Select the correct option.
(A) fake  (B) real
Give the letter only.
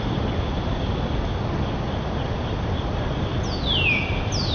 B